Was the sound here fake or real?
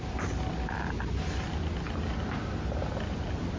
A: real